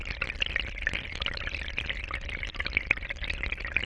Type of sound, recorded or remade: recorded